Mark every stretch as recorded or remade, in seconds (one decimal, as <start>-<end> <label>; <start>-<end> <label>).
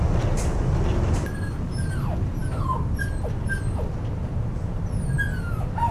0.0-5.9 recorded